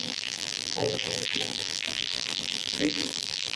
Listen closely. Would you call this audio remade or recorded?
remade